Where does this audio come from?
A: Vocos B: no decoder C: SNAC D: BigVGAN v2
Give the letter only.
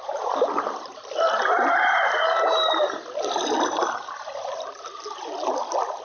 B